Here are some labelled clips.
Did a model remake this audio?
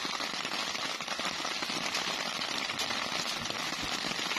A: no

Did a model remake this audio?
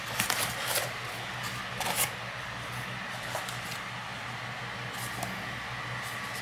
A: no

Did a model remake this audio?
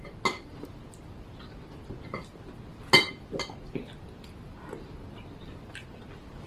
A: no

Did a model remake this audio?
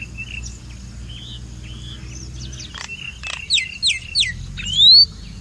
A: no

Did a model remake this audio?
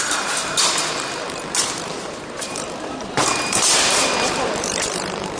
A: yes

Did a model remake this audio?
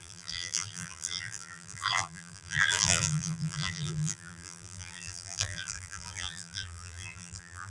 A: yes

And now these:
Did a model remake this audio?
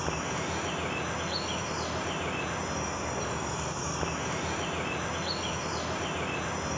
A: yes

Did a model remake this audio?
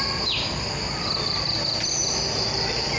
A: yes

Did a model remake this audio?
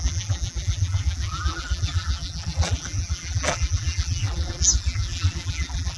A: yes